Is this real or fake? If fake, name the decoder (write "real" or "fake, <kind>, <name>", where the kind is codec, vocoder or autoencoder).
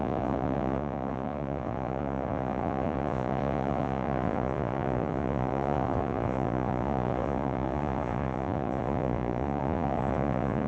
fake, vocoder, Vocos